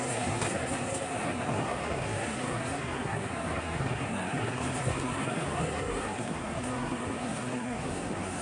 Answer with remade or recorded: remade